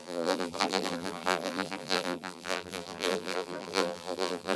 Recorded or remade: remade